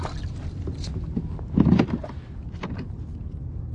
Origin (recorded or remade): recorded